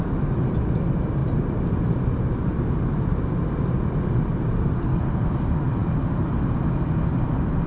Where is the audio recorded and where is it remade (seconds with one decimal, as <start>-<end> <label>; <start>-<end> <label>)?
0.0-7.7 recorded